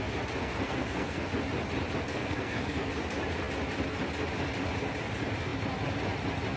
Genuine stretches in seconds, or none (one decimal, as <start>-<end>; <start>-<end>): 0.0-0.4; 1.3-2.1; 2.9-6.6